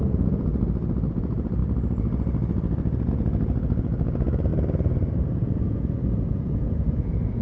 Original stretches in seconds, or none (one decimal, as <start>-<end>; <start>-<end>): 0.5-1.1; 1.6-3.1; 4.5-5.3